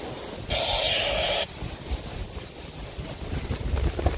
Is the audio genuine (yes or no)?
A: yes